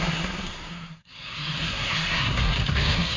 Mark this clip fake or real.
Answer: fake